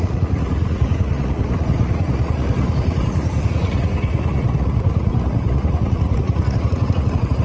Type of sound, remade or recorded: remade